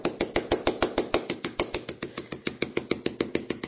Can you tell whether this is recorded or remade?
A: recorded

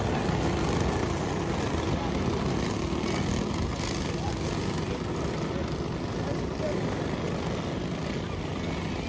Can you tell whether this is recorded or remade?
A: recorded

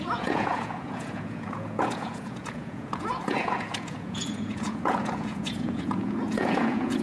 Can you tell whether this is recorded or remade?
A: remade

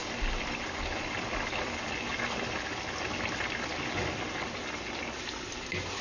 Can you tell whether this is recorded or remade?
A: recorded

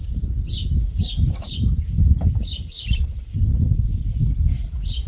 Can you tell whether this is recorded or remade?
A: recorded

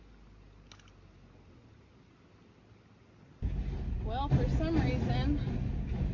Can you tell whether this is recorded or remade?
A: recorded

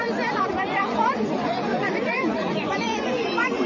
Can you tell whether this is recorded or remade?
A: remade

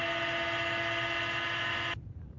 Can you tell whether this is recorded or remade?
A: recorded